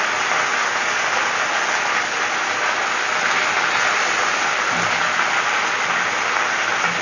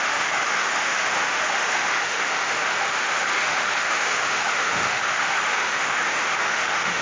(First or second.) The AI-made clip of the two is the second